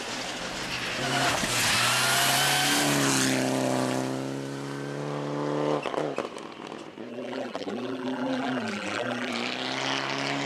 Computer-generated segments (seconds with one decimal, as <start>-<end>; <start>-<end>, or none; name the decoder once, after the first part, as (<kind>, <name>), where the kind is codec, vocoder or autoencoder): 7.1-9.3 (vocoder, BigVGAN v2)